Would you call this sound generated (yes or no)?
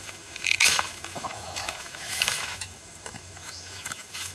yes